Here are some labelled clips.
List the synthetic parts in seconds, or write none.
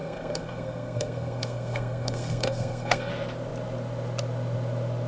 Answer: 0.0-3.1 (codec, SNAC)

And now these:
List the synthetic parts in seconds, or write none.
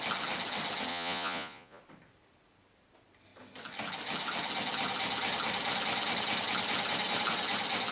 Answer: 0.9-1.8 (vocoder, Vocos)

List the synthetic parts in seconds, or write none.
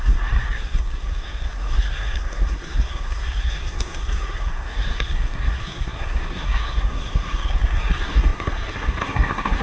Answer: 0.0-9.6 (codec, SNAC)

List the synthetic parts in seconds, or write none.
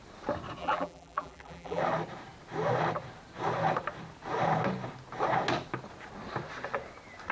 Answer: 0.6-1.8 (vocoder, BigVGAN v2)